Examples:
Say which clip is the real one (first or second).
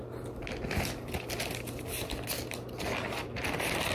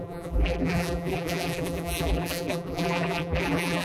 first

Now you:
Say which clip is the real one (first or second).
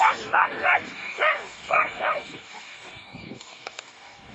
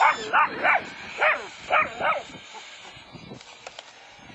second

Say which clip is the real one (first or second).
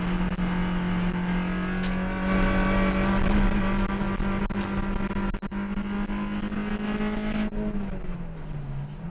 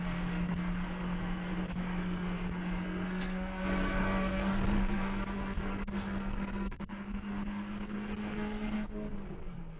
first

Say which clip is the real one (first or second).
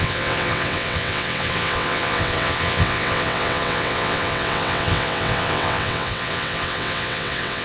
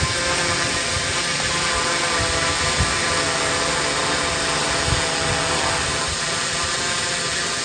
second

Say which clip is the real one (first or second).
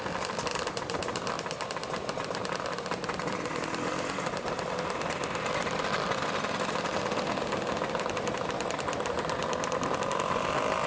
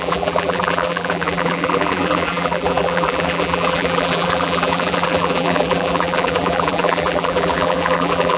first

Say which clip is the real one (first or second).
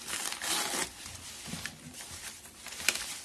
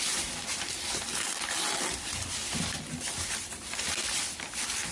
first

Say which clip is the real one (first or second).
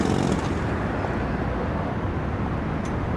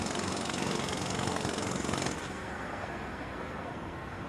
first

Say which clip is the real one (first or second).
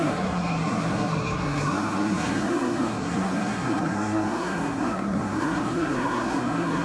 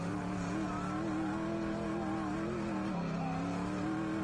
second